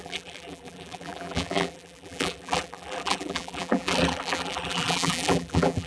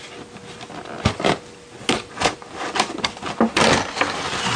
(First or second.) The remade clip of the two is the first